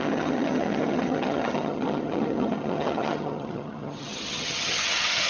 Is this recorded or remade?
remade